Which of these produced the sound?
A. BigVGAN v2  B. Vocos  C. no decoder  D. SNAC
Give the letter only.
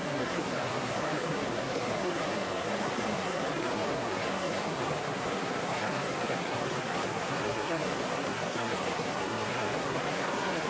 D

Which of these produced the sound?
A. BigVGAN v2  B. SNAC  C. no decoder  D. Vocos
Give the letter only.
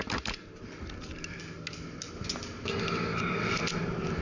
C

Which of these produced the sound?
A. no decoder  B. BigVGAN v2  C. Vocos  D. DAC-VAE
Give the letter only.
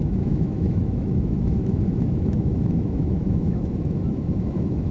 D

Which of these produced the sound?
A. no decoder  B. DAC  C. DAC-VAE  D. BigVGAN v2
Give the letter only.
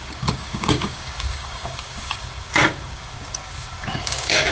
B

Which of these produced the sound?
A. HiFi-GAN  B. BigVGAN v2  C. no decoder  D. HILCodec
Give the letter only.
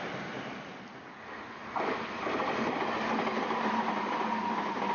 C